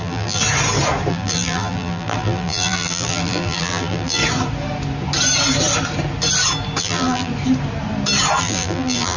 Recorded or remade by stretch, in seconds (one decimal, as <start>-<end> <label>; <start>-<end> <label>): 0.0-0.4 remade; 0.4-1.1 recorded; 1.1-4.2 remade; 4.2-6.8 recorded; 6.8-7.3 remade; 7.3-8.4 recorded; 8.4-9.2 remade